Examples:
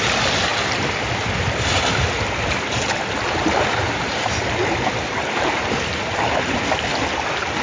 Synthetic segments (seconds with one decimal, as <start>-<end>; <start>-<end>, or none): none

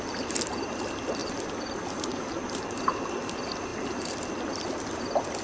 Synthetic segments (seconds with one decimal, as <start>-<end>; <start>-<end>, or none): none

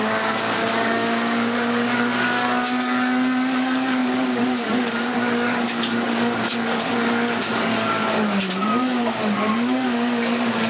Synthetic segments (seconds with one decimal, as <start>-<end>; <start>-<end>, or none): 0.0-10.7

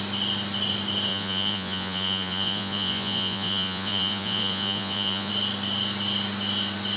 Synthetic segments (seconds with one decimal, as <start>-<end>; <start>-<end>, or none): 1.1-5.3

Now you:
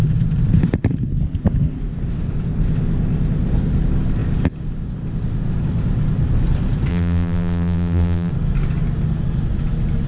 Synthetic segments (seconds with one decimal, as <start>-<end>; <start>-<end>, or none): 6.9-8.3

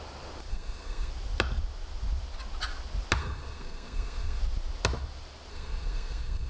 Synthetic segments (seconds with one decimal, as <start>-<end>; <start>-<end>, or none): 0.5-1.1; 3.2-4.4; 5.5-6.5